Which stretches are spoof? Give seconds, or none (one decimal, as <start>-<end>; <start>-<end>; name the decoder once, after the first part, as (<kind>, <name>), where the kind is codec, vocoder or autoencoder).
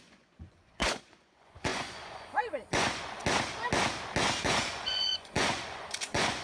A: 0.0-3.2 (vocoder, Vocos); 4.4-6.4